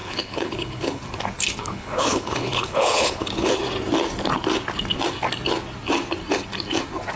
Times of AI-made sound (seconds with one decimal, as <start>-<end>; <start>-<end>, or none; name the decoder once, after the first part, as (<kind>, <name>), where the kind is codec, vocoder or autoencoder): 0.0-1.0 (codec, HILCodec); 1.6-3.5